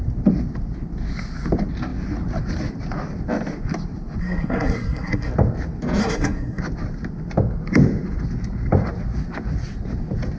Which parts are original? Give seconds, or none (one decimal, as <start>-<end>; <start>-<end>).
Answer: 0.0-4.2; 5.3-6.0; 6.6-10.4